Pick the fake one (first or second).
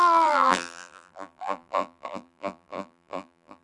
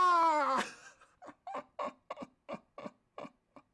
first